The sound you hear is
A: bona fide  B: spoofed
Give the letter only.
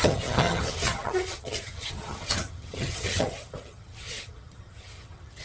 B